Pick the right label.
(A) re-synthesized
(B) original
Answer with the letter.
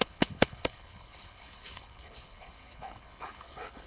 A